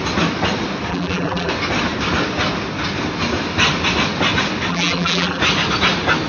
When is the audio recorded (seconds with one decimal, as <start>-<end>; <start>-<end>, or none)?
0.0-0.9; 1.5-4.7; 5.4-6.3